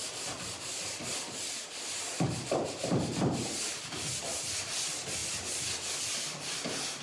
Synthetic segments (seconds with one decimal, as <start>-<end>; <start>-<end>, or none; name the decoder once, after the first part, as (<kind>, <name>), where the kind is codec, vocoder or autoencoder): 0.0-4.2 (vocoder, BigVGAN v2)